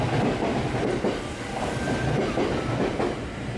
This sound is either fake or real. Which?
real